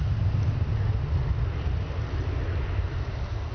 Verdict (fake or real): real